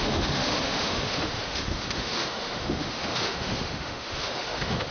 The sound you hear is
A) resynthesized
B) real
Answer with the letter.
A